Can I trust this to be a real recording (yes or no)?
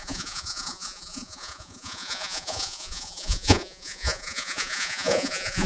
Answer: no